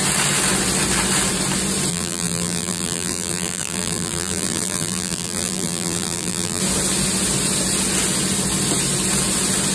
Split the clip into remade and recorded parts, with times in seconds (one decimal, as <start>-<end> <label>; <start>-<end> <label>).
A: 0.0-1.9 recorded; 1.9-6.6 remade; 6.6-9.7 recorded